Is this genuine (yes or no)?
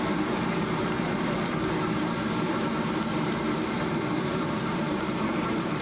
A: no